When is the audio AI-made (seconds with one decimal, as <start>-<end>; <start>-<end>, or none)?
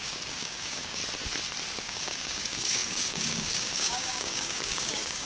0.0-1.0; 1.8-5.3